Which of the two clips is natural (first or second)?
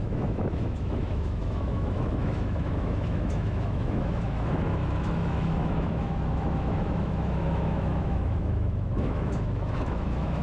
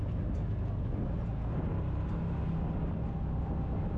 second